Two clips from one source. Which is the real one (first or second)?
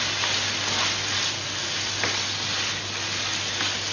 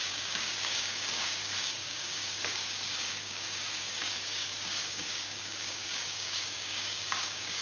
first